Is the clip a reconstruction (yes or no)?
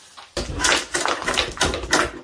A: no